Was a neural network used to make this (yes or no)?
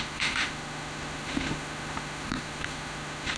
yes